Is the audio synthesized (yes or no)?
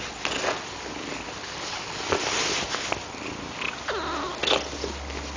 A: no